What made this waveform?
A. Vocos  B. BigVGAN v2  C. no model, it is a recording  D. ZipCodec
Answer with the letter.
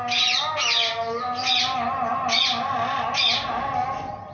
C